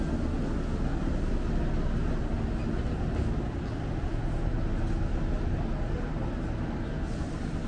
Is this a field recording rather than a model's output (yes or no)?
yes